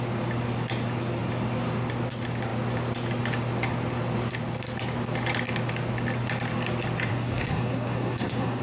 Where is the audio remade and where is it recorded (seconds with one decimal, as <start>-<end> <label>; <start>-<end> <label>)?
0.0-7.1 recorded; 7.1-8.6 remade